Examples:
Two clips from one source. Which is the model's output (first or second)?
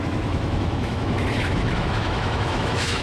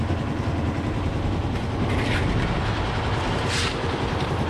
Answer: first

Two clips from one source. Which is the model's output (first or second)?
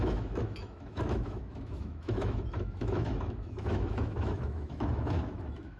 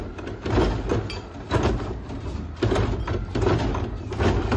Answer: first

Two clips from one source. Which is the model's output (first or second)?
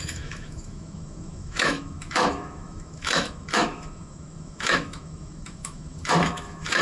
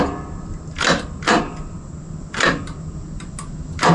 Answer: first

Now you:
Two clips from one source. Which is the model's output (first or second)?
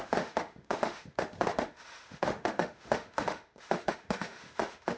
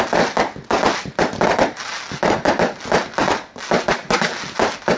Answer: first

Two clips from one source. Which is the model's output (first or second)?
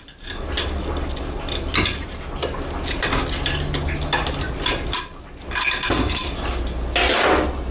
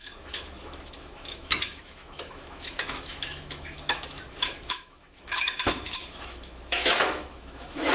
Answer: second